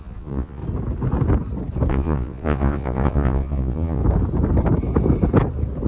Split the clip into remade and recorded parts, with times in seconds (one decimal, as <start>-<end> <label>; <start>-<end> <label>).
0.0-0.6 remade; 0.6-1.9 recorded; 1.9-4.0 remade; 4.0-5.9 recorded